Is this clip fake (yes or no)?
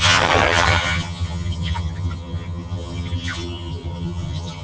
yes